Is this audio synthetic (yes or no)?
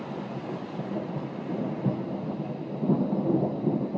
no